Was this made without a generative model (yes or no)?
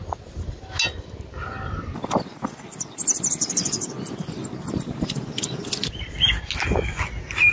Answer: yes